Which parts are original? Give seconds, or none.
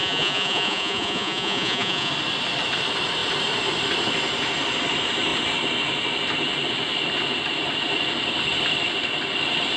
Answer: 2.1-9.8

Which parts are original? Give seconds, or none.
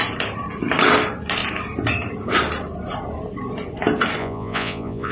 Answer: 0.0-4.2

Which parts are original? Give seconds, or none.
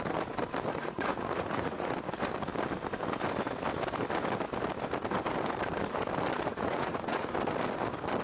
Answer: 0.0-0.7; 1.9-6.5; 7.3-8.2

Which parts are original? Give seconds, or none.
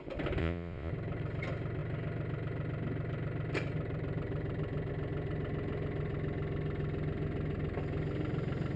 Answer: 0.0-0.4; 0.9-8.8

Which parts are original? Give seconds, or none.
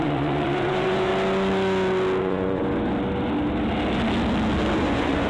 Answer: 1.1-2.2; 2.6-4.8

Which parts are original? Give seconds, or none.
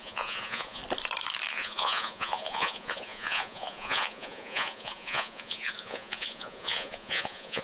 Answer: 0.8-1.5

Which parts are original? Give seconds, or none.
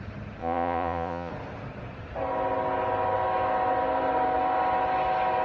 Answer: 0.0-0.4; 1.3-5.4